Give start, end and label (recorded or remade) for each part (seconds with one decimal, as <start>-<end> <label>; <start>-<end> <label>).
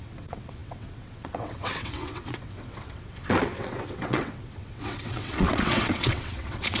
0.0-6.8 remade